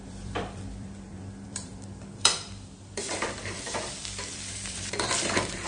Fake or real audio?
fake